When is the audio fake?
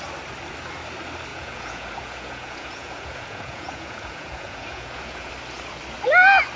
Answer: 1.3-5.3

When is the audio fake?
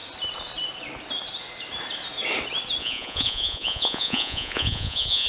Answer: 2.8-5.3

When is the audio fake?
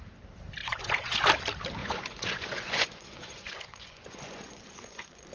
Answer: 0.6-1.2; 1.8-5.3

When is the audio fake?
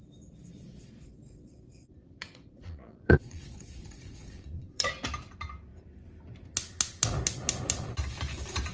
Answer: 0.6-4.9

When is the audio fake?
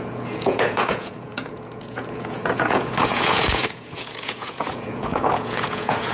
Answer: 0.0-6.1